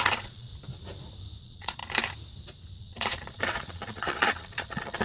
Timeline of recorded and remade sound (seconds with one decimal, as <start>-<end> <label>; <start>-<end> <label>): 0.0-0.5 remade; 0.5-1.4 recorded; 1.4-1.8 remade; 1.8-2.8 recorded; 2.8-5.0 remade